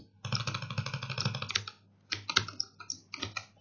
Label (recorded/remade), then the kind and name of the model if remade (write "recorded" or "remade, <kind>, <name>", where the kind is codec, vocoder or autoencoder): recorded